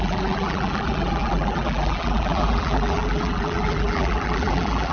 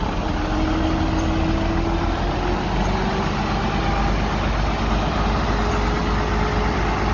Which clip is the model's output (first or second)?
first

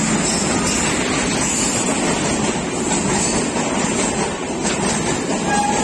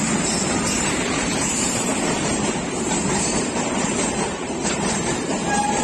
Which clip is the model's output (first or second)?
second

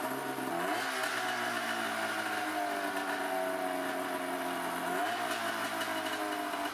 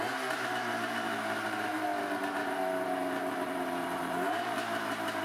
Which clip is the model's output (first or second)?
second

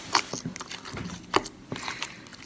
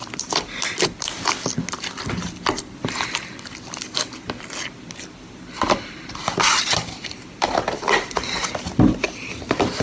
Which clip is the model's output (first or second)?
second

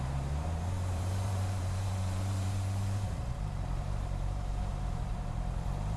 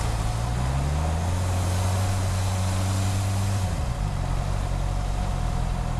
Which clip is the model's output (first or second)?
first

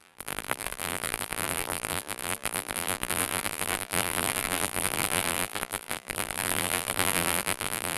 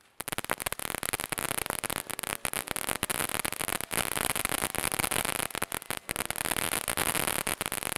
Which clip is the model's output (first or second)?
first